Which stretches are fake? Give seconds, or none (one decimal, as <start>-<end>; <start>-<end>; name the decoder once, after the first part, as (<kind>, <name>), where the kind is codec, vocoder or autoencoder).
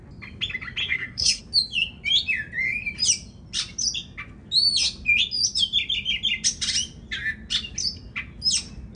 0.8-1.4 (codec, SNAC)